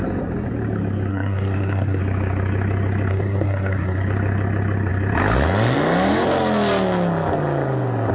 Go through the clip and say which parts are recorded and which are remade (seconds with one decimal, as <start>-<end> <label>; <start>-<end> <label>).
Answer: 0.0-1.1 recorded; 1.1-2.0 remade; 2.0-3.1 recorded; 3.1-4.0 remade; 4.0-8.1 recorded